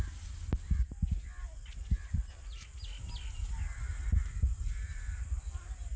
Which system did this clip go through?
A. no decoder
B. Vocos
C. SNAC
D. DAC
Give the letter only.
A